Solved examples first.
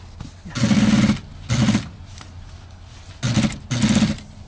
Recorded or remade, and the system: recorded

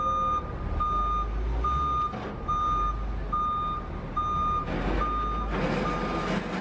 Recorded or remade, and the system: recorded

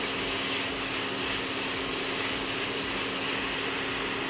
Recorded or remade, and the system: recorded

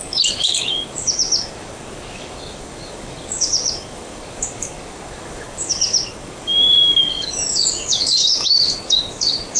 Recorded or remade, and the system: remade, codec, DAC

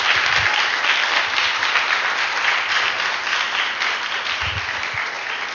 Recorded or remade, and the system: recorded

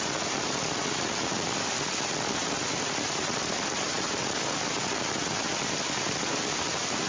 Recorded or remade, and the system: recorded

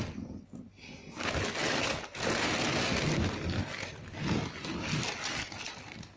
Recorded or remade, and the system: recorded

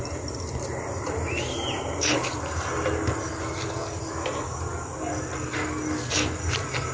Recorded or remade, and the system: recorded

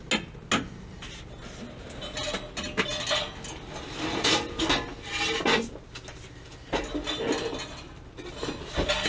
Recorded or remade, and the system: recorded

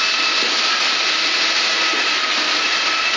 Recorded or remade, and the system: recorded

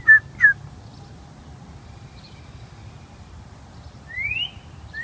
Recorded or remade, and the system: recorded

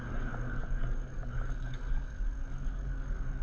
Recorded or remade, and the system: remade, codec, DAC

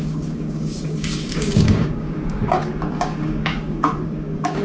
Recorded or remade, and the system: remade, codec, DAC